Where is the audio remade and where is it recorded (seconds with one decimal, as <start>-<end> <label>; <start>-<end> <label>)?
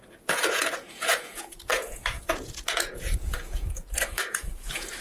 0.0-5.0 remade